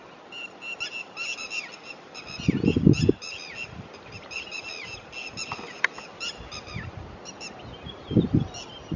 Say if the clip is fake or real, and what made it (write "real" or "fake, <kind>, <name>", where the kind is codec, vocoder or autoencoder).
real